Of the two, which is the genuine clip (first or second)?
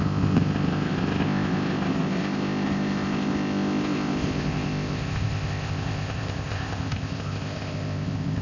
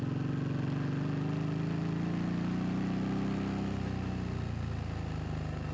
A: second